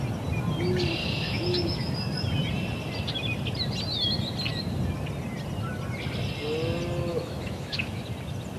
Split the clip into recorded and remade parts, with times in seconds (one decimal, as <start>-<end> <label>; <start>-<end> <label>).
0.0-1.0 recorded; 1.0-1.9 remade; 1.9-7.1 recorded; 7.1-8.0 remade; 8.0-8.6 recorded